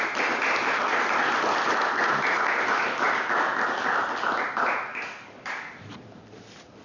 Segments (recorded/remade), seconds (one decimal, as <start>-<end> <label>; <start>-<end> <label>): 0.0-4.9 recorded; 4.9-5.7 remade; 5.7-6.8 recorded